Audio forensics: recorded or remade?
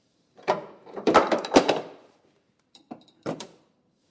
remade